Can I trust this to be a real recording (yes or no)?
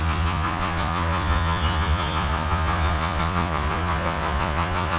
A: no